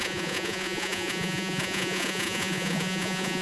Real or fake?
fake